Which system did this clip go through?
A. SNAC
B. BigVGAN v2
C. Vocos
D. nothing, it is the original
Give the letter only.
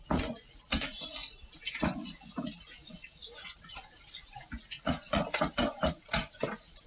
C